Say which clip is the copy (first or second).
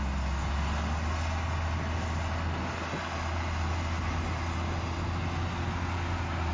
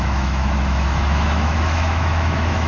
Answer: second